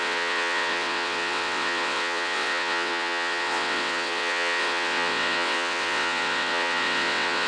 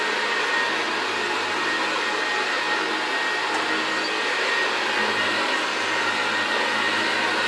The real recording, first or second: second